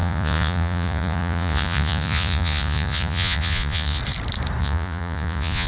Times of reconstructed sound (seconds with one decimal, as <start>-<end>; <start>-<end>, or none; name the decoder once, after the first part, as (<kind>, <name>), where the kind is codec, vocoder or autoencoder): 0.0-4.0 (vocoder, Vocos); 4.6-5.7